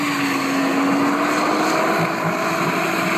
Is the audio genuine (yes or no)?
yes